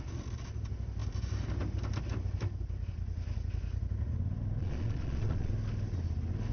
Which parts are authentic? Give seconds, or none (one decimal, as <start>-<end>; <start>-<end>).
0.0-4.6; 5.5-6.5